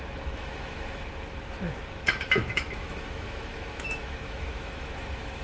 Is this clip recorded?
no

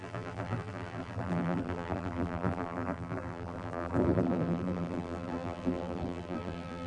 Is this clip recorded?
no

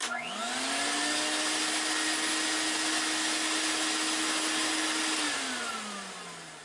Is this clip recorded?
yes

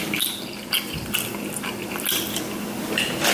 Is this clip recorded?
yes